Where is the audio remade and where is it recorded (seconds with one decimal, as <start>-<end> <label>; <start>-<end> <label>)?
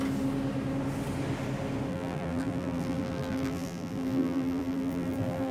0.0-1.9 recorded; 1.9-5.5 remade